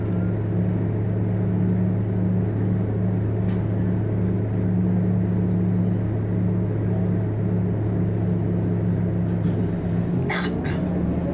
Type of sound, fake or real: real